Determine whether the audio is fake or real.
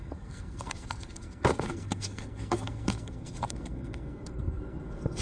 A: fake